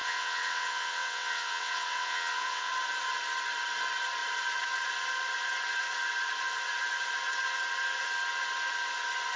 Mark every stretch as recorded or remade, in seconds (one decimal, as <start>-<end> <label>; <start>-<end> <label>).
0.0-2.7 remade; 2.7-9.4 recorded